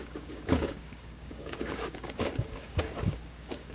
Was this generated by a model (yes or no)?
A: yes